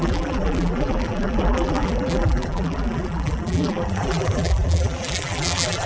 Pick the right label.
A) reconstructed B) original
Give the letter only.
A